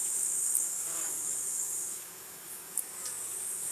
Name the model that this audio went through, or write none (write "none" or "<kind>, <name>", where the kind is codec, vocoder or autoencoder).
codec, DAC